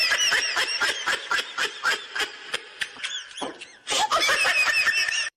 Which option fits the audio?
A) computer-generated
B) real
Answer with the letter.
A